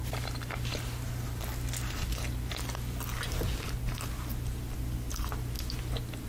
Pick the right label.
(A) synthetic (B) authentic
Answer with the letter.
B